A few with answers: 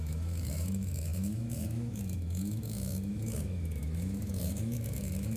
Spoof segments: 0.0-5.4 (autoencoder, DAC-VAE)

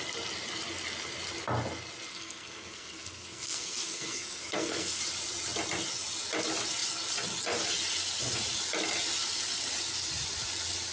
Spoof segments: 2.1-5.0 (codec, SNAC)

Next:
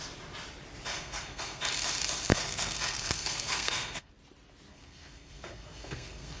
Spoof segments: 0.9-1.6 (codec, SNAC); 2.3-4.1; 4.7-6.4

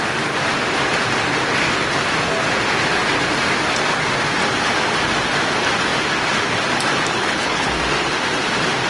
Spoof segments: 7.1-7.7 (codec, HILCodec)

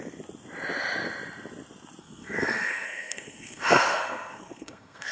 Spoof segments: 2.0-5.1 (codec, SNAC)

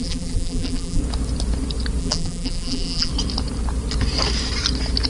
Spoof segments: 0.0-1.0 (vocoder, BigVGAN v2); 2.0-3.1